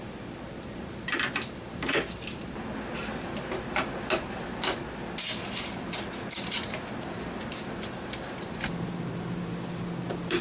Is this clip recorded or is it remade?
remade